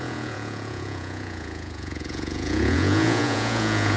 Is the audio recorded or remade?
remade